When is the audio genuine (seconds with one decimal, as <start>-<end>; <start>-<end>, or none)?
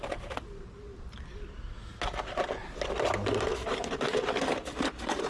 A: 0.0-5.3